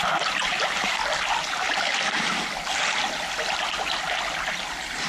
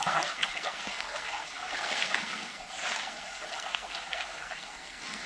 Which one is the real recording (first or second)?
first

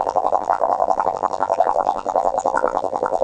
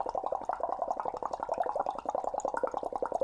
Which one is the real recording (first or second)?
second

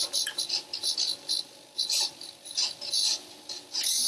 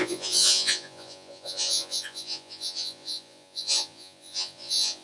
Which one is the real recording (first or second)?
first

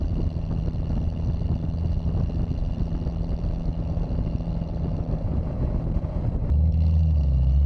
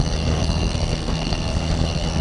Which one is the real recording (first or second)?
first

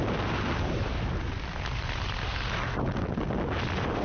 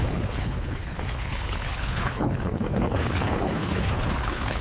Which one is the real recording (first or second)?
first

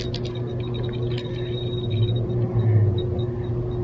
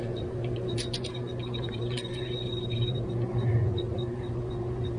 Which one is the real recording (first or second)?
first